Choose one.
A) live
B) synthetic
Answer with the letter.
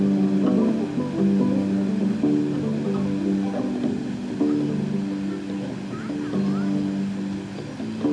A